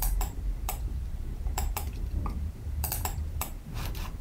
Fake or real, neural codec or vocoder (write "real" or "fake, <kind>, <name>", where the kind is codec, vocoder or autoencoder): fake, vocoder, BigVGAN v2